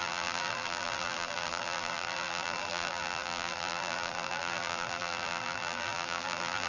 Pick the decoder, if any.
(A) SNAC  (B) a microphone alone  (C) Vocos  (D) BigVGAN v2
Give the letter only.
D